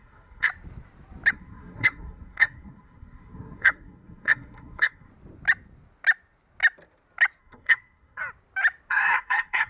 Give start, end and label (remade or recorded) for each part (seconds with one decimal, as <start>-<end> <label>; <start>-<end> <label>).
0.0-0.5 remade; 0.5-1.3 recorded; 1.3-5.1 remade; 5.1-7.4 recorded; 7.4-8.2 remade; 8.2-8.9 recorded; 8.9-9.7 remade